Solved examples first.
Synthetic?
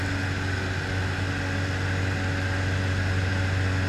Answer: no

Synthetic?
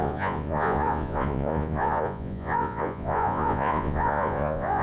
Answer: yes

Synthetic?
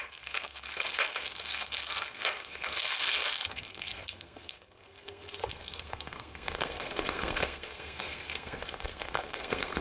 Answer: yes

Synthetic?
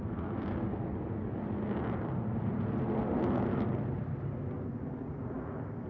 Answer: no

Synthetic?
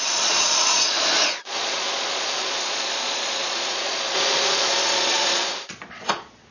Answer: yes